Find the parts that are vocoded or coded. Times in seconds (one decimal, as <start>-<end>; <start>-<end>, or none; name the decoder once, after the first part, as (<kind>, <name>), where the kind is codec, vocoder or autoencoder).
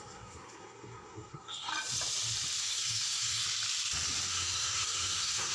0.0-1.7 (codec, SNAC); 2.6-3.4; 4.3-5.5